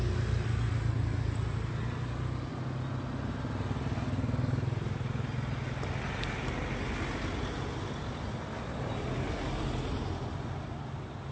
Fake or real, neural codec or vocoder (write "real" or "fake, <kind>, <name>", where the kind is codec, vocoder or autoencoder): real